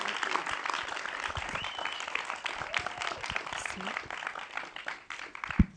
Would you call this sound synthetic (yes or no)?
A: no